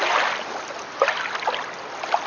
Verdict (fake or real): real